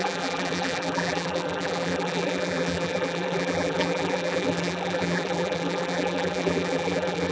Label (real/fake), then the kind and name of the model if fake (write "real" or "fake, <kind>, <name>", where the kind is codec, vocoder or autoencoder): fake, vocoder, BigVGAN v2